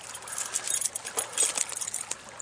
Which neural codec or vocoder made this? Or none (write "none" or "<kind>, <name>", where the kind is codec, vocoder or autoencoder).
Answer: none